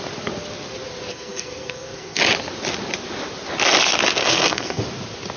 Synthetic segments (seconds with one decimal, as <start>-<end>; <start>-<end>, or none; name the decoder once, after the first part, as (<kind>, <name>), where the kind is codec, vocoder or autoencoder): 1.1-2.2 (codec, SNAC); 4.2-4.8